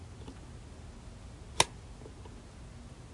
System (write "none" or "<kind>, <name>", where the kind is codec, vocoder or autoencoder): none